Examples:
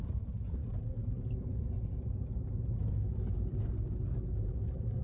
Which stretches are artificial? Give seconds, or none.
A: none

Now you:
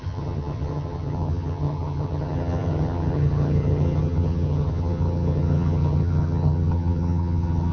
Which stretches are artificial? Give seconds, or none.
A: 0.0-7.7 (vocoder, HiFi-GAN)

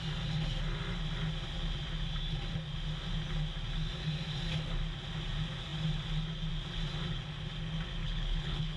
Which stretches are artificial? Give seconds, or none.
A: 8.0-8.8 (codec, HILCodec)

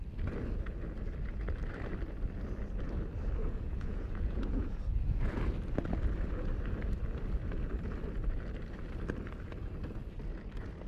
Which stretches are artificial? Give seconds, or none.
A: 3.4-5.4 (vocoder, Vocos)

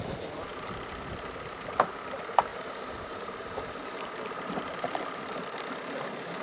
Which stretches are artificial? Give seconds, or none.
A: 2.5-4.0 (vocoder, BigVGAN v2)

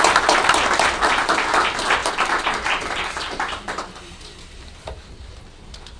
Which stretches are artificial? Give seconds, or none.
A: none

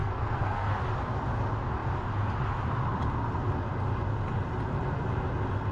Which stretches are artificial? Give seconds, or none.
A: 0.0-0.8 (codec, SNAC)